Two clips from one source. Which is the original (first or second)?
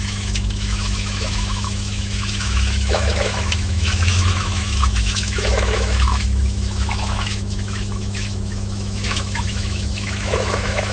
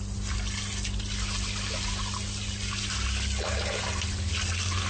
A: second